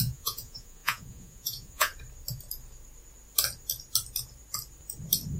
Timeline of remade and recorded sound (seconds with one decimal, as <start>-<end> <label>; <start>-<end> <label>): 0.0-1.9 remade; 1.9-5.4 recorded

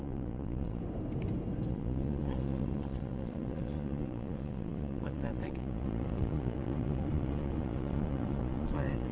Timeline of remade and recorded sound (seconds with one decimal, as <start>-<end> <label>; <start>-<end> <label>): 0.0-0.8 remade; 0.8-1.7 recorded; 1.7-9.1 remade

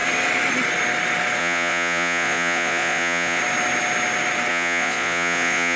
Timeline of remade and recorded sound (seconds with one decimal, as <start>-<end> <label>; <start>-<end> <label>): 0.0-1.4 recorded; 1.4-3.4 remade; 3.4-4.5 recorded; 4.5-5.8 remade

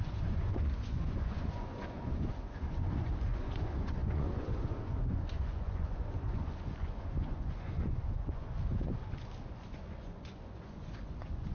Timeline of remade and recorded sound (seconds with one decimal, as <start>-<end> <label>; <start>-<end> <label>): 0.0-11.5 remade